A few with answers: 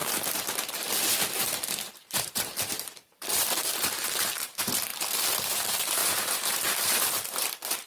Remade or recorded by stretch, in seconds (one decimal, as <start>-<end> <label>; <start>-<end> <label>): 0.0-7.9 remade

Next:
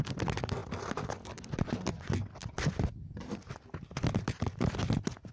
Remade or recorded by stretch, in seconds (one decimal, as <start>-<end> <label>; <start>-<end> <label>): 0.0-5.3 recorded

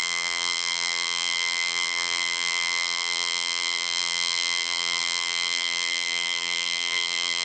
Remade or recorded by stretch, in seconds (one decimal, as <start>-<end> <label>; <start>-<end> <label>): 0.0-7.4 remade

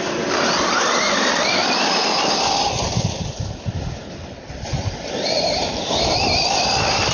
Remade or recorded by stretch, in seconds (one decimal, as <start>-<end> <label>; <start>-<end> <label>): 0.0-7.1 recorded

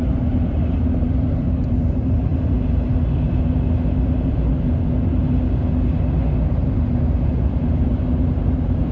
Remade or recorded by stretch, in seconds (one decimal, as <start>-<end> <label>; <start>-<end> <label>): 0.0-2.3 remade; 2.3-7.3 recorded; 7.3-8.9 remade